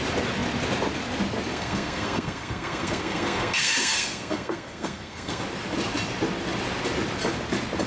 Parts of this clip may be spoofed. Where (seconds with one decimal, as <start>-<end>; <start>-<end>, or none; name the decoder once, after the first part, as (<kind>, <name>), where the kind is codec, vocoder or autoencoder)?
1.5-5.4 (codec, SNAC)